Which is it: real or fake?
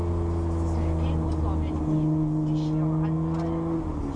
real